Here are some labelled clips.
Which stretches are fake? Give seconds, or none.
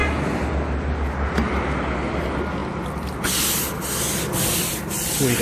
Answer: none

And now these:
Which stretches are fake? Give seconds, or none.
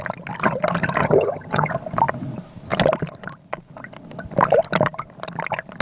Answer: 1.0-1.7 (vocoder, HiFi-GAN)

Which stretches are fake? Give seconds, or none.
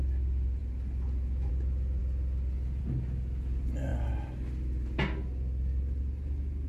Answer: none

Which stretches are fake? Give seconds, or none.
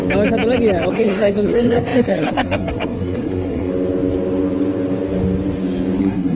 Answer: 0.9-3.7 (codec, SNAC); 6.0-6.4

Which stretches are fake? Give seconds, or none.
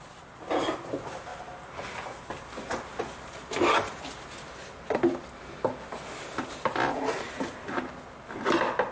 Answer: none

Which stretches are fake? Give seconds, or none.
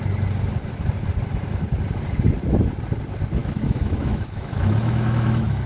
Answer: 3.4-5.7 (autoencoder, DAC-VAE)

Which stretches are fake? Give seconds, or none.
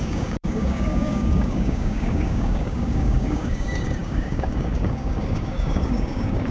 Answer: 0.0-6.5 (codec, DAC)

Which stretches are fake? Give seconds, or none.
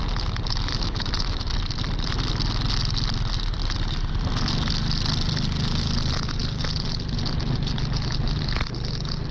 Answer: 0.7-1.5 (autoencoder, DAC-VAE)